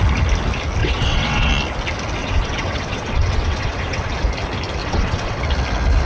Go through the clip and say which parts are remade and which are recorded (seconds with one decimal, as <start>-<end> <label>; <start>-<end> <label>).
0.0-0.8 recorded; 0.8-1.5 remade; 1.5-2.2 recorded; 2.2-4.1 remade; 4.1-4.8 recorded; 4.8-5.4 remade; 5.4-6.1 recorded